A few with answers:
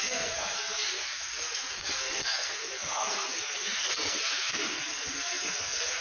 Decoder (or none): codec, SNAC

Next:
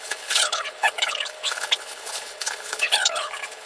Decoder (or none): codec, HILCodec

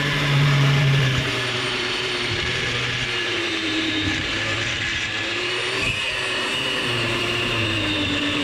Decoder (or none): vocoder, BigVGAN v2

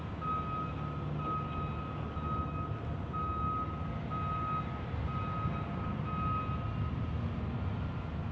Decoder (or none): none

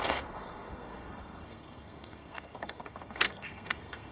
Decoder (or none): codec, SNAC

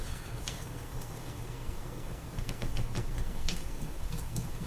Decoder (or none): codec, SNAC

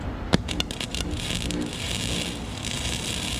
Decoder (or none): none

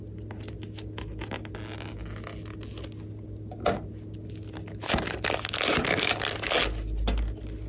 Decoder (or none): none